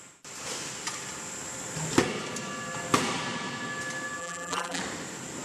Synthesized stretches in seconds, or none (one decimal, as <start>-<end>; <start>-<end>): 4.2-4.8